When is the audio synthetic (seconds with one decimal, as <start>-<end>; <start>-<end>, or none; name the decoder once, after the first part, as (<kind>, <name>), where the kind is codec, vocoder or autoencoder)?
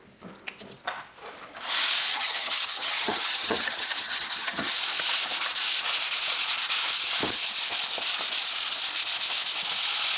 2.1-4.7 (vocoder, HiFi-GAN)